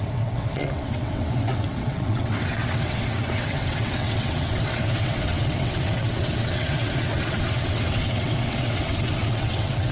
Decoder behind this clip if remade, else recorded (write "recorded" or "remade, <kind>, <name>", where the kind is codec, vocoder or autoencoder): remade, vocoder, WaveNeXt